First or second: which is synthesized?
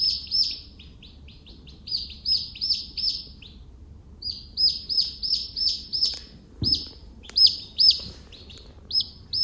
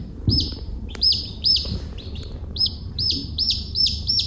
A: second